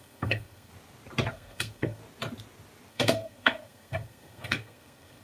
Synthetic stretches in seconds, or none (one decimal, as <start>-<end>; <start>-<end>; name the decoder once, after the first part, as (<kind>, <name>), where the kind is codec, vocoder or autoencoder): 0.0-0.7 (codec, SNAC); 1.3-2.0; 2.9-5.2

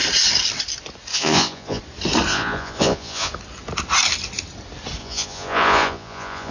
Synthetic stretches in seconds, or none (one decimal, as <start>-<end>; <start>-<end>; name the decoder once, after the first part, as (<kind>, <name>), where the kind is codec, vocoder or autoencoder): 1.1-1.8 (vocoder, Vocos); 2.3-3.3; 5.0-6.5

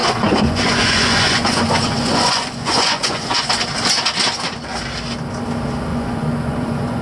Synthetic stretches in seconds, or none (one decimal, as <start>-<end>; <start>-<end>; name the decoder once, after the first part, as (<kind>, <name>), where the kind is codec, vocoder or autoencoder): 0.0-3.5 (vocoder, Vocos); 5.9-7.0

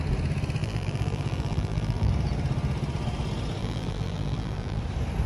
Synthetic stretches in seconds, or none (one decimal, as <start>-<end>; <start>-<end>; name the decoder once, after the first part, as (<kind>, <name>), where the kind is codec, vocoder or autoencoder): 0.6-2.1 (vocoder, BigVGAN v2); 3.6-4.8

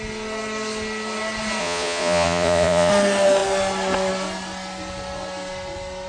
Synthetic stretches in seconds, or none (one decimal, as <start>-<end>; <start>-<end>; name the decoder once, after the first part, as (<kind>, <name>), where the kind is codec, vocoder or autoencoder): 1.6-2.9 (vocoder, Vocos)

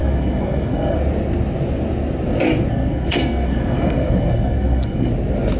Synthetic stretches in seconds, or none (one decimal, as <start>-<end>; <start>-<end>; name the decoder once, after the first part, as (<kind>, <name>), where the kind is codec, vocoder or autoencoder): 0.0-1.0 (codec, SNAC); 2.7-5.1

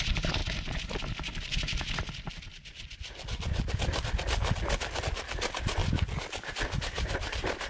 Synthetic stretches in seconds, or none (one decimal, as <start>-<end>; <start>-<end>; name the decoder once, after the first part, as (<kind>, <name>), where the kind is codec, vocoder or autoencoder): 0.0-0.4 (vocoder, BigVGAN v2); 5.0-5.8; 6.5-7.7

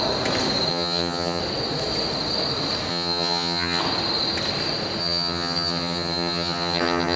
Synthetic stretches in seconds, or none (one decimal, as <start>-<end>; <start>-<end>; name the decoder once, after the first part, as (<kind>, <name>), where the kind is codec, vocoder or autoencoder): 0.7-1.4 (vocoder, HiFi-GAN); 2.9-3.8; 5.0-7.2